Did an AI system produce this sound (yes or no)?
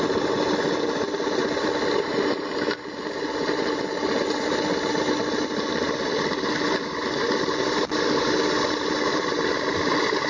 no